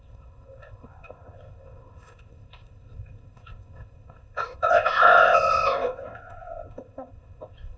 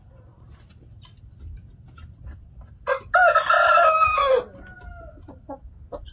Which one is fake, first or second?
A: first